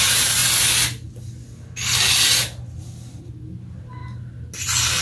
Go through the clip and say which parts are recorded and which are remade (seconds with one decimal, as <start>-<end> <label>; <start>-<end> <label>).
0.0-5.0 recorded